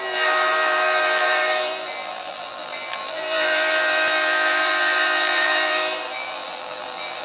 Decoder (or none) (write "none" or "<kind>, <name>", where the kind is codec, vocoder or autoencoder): vocoder, BigVGAN v2